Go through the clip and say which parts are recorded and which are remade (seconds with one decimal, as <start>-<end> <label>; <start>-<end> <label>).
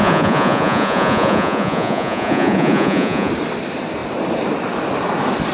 0.0-3.3 remade; 3.3-5.5 recorded